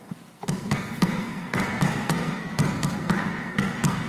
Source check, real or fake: fake